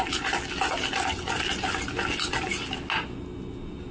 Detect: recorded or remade recorded